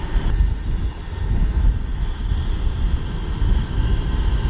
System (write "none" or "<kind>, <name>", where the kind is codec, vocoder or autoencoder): none